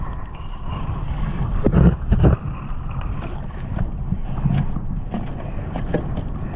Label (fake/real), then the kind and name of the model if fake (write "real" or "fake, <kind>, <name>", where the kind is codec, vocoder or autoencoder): real